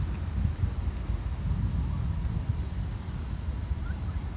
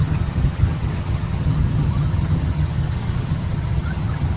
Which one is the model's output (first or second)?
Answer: second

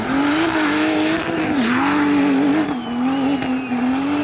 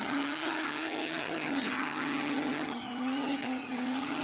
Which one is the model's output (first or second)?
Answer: second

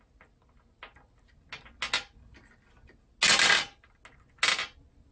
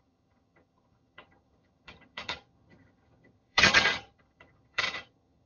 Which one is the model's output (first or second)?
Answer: second